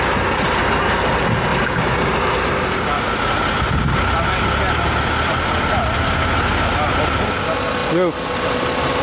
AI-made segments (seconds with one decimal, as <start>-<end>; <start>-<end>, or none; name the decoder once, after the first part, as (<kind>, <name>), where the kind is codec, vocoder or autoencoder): none

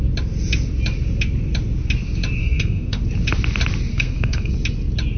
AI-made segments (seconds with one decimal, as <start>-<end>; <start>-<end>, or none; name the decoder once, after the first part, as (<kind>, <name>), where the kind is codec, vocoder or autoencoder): 2.4-3.0 (codec, SNAC); 3.9-4.5

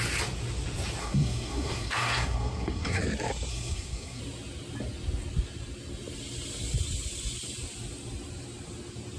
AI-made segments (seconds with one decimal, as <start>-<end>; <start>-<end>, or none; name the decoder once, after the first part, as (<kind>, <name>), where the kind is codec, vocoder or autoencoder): 1.0-3.0 (codec, SNAC); 3.5-4.2

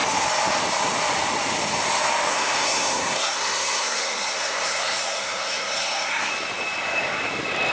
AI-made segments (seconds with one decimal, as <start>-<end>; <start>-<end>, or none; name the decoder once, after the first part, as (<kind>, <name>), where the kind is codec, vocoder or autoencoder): 2.3-6.3 (codec, SNAC)

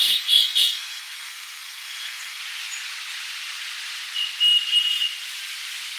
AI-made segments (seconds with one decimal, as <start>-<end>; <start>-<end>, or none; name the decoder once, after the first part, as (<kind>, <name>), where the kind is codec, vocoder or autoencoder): 0.0-2.4 (codec, SNAC)

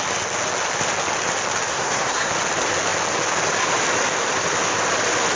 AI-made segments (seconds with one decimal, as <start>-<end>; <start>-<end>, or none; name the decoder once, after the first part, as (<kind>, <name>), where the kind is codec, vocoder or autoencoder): 1.7-2.3 (codec, SNAC)